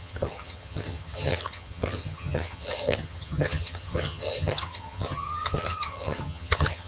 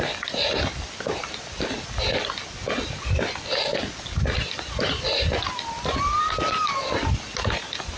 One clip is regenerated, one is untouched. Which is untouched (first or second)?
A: second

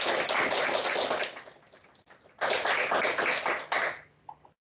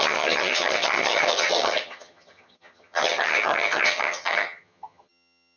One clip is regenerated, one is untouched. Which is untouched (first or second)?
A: first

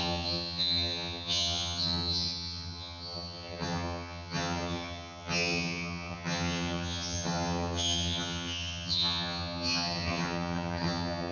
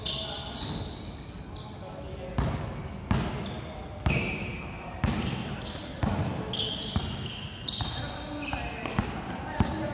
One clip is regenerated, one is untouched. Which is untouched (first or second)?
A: second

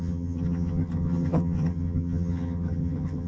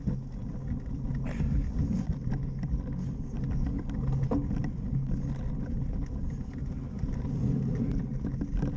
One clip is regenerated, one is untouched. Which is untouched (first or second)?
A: second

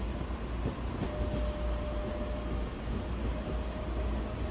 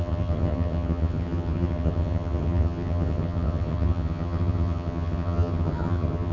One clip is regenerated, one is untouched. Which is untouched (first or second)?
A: first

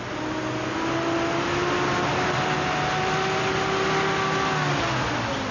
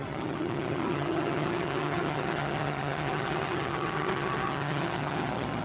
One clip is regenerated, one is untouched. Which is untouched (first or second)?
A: first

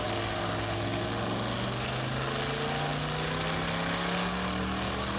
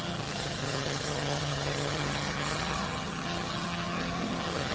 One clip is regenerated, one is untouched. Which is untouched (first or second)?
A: first